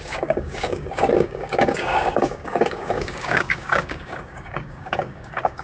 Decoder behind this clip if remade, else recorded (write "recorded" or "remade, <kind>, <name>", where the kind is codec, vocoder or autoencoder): remade, codec, DAC